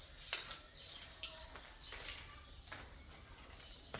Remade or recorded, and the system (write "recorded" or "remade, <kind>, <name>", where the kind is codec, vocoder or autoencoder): recorded